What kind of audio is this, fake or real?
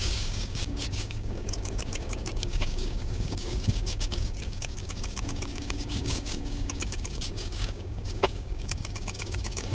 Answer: fake